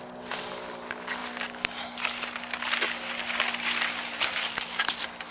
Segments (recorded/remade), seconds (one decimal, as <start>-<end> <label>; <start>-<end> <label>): 0.0-5.3 recorded